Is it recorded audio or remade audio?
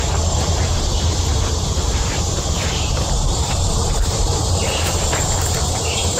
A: remade